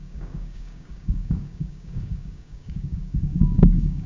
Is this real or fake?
fake